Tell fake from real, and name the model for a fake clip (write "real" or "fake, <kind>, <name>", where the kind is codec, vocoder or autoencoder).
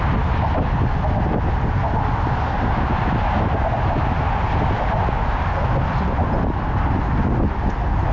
real